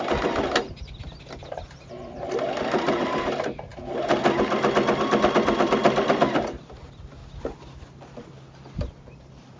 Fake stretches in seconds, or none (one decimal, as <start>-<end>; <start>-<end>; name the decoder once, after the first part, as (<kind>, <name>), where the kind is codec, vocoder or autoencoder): 0.0-3.7 (vocoder, BigVGAN v2); 5.2-5.8; 6.6-7.2; 8.9-9.6